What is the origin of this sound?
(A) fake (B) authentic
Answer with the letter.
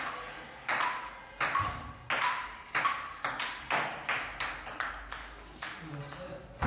B